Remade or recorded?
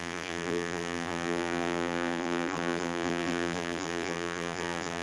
remade